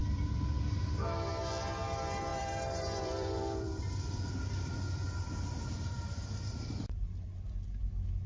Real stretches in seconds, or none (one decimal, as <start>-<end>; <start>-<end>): 1.3-2.3; 6.7-8.3